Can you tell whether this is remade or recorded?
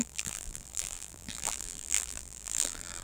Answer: remade